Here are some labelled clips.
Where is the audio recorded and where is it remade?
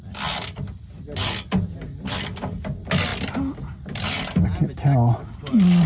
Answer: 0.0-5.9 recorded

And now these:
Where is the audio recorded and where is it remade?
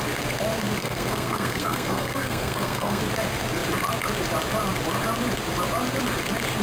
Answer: 0.0-0.8 recorded; 0.8-3.0 remade; 3.0-6.6 recorded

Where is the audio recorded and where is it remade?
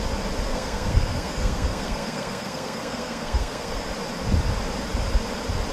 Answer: 0.0-0.5 recorded; 0.5-3.9 remade; 3.9-5.7 recorded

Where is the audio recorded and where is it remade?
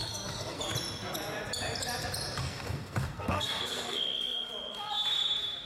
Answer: 0.0-0.6 remade; 0.6-2.4 recorded; 2.4-4.5 remade; 4.5-5.7 recorded